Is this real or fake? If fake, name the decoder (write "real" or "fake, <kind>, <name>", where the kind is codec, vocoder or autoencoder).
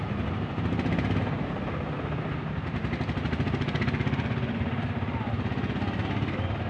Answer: real